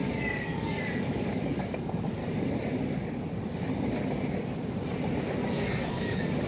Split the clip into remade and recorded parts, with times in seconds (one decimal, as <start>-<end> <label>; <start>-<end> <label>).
0.0-2.2 remade; 2.2-5.9 recorded; 5.9-6.5 remade